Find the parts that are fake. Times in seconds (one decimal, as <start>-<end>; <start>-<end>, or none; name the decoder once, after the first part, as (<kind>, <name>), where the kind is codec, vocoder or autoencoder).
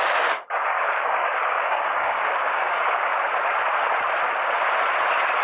0.0-3.1 (codec, DAC)